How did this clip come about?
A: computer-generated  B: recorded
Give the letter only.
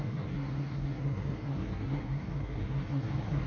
A